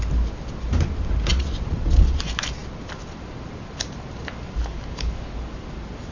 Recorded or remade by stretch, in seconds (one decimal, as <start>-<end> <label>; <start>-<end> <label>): 0.0-1.3 recorded; 1.3-2.2 remade; 2.2-6.1 recorded